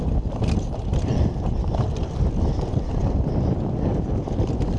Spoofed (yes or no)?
no